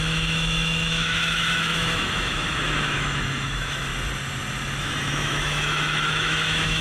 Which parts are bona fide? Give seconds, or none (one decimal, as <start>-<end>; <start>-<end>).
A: 3.9-4.8